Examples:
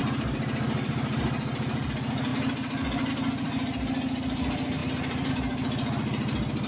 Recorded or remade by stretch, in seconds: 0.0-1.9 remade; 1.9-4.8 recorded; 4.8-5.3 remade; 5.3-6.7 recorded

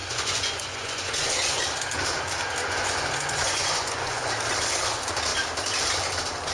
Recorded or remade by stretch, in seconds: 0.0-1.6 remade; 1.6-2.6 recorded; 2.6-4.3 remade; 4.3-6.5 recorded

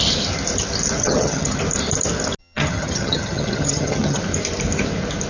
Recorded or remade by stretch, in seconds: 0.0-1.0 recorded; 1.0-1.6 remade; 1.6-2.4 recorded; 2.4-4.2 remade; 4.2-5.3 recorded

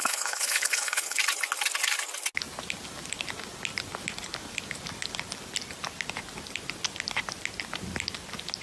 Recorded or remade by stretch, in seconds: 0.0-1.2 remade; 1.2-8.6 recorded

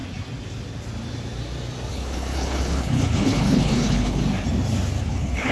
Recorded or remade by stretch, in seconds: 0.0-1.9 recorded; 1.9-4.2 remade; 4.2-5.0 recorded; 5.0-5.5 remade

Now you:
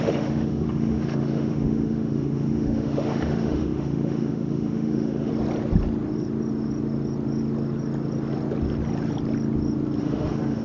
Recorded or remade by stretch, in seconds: 0.0-5.3 remade; 5.3-10.0 recorded; 10.0-10.6 remade

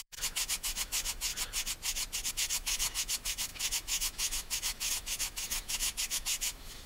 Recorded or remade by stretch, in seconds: 0.0-1.3 remade; 1.3-2.3 recorded; 2.3-6.9 remade

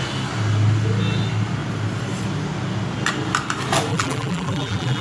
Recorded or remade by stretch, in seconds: 0.0-3.9 recorded; 3.9-5.0 remade